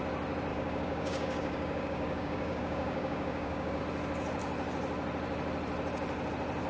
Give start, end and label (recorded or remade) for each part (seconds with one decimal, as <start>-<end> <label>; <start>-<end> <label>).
0.0-0.5 recorded; 0.5-3.8 remade; 3.8-6.7 recorded